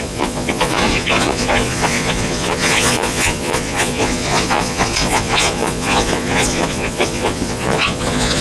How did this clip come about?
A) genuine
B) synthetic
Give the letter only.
B